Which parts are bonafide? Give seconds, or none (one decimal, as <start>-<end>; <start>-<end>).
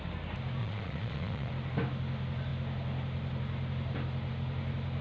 0.0-0.6; 1.5-5.0